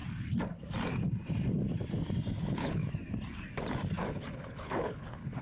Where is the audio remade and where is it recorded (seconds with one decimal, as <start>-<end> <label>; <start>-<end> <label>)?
0.0-2.4 recorded; 2.4-2.8 remade; 2.8-4.1 recorded; 4.1-5.4 remade

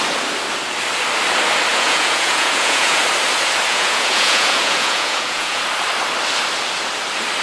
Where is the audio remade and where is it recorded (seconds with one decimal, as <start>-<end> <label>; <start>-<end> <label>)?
0.0-1.7 recorded; 1.7-3.0 remade; 3.0-3.7 recorded; 3.7-5.6 remade; 5.6-7.4 recorded

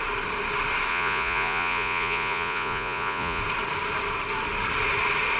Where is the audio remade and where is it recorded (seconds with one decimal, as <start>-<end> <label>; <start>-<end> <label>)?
0.0-0.9 recorded; 0.9-3.4 remade; 3.4-5.4 recorded

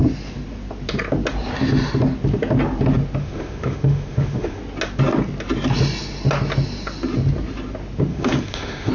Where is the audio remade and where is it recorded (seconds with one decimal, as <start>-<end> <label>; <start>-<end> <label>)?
0.0-3.2 recorded; 3.2-4.6 remade; 4.6-8.1 recorded; 8.1-8.9 remade

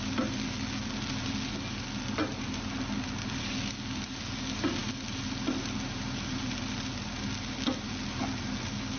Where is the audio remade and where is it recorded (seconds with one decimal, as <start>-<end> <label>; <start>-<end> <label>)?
0.0-9.0 recorded

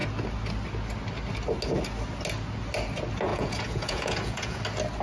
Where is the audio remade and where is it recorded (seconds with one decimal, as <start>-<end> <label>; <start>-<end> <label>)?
0.0-3.3 recorded; 3.3-4.6 remade; 4.6-5.0 recorded